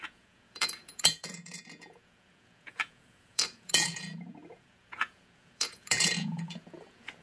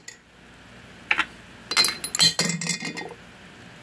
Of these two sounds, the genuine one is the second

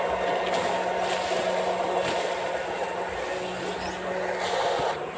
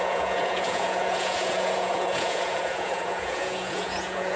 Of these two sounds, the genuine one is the first